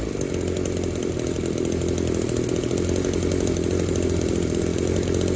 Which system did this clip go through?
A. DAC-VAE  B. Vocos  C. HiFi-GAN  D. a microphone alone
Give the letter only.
D